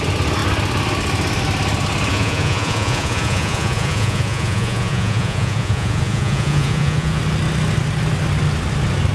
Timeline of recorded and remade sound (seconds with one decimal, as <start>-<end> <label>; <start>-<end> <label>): 0.0-2.1 recorded; 2.1-7.2 remade; 7.2-9.1 recorded